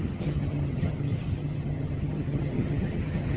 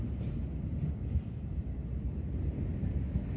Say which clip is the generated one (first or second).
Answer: first